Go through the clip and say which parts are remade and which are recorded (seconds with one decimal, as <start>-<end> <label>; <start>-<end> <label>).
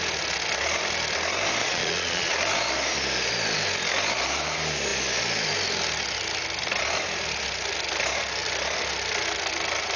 0.0-1.6 recorded; 1.6-2.3 remade; 2.3-10.0 recorded